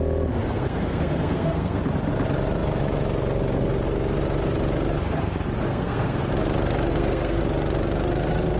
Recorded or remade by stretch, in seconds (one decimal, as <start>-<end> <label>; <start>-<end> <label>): 0.0-0.4 recorded; 0.4-1.8 remade; 1.8-5.7 recorded; 5.7-6.2 remade; 6.2-6.9 recorded; 6.9-7.4 remade; 7.4-8.6 recorded